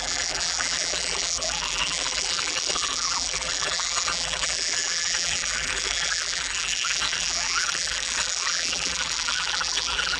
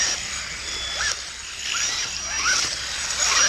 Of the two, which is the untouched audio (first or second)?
second